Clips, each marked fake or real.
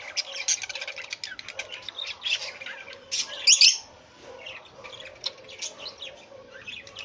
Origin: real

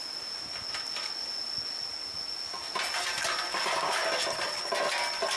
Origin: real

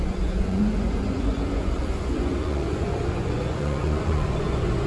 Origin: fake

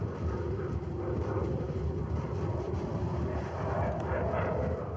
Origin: fake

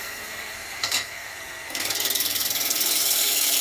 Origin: fake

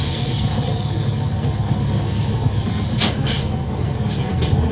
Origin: fake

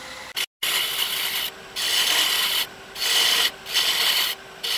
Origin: real